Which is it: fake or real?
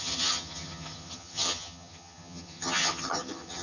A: fake